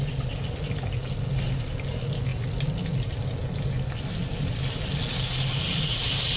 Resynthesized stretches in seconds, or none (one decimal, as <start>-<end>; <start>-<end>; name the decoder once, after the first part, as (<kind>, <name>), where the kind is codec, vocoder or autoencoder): none